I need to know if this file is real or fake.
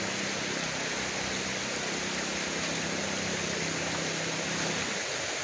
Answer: real